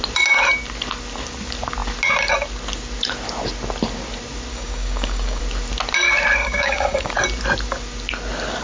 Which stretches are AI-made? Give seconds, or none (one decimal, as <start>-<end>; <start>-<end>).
4.5-5.4; 6.4-7.1